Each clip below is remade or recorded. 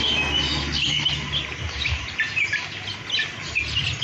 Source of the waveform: recorded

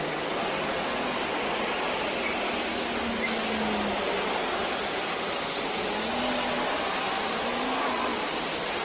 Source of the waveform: recorded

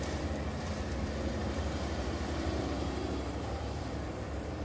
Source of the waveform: remade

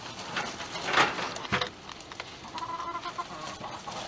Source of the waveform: recorded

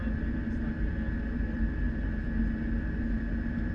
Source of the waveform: recorded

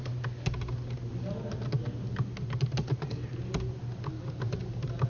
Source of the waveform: recorded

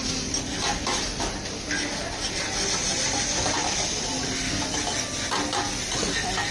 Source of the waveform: recorded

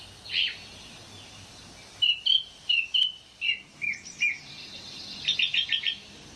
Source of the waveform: recorded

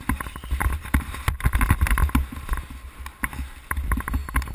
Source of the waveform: recorded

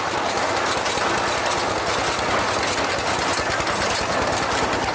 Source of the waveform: recorded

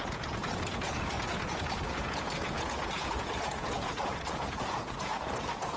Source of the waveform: remade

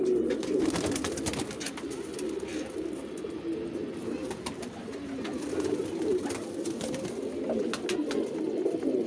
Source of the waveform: recorded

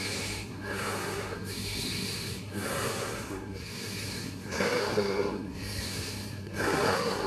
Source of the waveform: remade